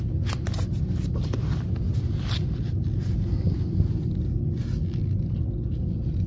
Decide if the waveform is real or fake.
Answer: real